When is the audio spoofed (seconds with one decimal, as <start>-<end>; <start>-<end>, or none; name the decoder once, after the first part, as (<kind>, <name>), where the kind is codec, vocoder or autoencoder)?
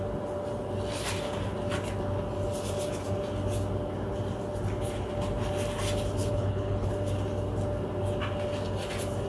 6.2-6.9 (codec, HILCodec)